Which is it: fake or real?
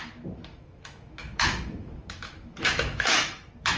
fake